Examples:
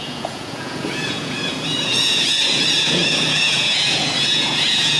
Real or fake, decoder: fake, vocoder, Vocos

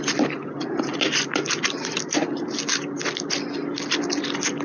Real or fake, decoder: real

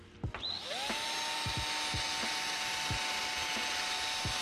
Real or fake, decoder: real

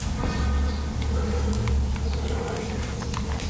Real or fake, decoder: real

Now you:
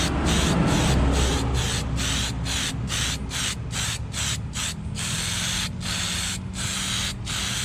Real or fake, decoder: real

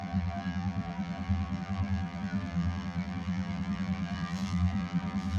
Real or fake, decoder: fake, vocoder, BigVGAN v2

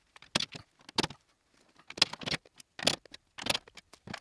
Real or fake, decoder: real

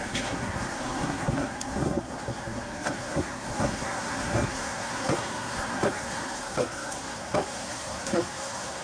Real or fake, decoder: fake, codec, SNAC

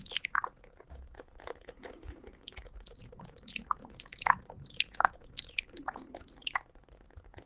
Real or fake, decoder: fake, vocoder, Vocos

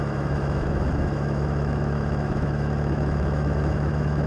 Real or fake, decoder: fake, autoencoder, DAC-VAE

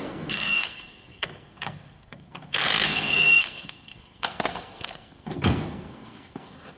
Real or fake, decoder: fake, codec, SNAC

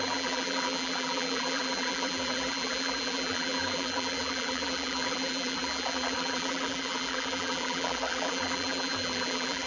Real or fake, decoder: fake, vocoder, BigVGAN v2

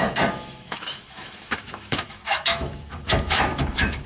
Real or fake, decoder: fake, autoencoder, DAC-VAE